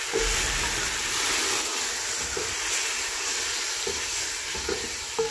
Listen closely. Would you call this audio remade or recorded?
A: recorded